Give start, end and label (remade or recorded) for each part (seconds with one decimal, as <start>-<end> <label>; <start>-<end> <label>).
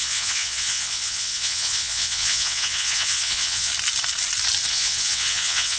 0.0-3.7 remade; 3.7-4.7 recorded; 4.7-5.8 remade